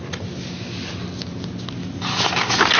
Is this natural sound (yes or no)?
yes